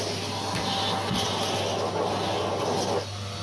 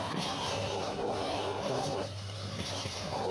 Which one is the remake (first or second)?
second